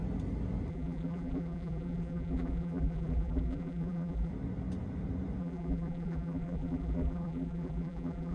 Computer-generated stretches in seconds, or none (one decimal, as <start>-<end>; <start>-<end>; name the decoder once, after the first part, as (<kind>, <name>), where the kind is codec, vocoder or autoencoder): 0.7-4.3 (vocoder, BigVGAN v2); 5.4-8.3